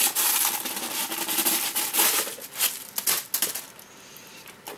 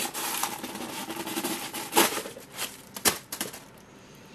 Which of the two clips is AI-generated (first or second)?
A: second